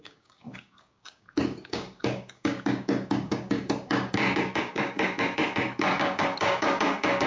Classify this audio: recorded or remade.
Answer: remade